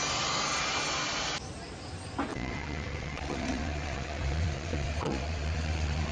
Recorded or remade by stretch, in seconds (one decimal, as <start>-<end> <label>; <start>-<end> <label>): 0.0-2.3 recorded; 2.3-6.1 remade